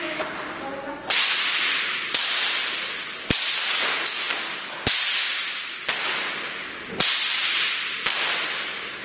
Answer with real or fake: real